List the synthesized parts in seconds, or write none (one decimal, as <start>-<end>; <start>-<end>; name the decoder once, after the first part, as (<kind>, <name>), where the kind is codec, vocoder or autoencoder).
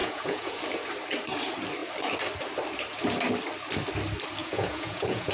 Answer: 0.0-0.6 (vocoder, Vocos); 4.4-5.3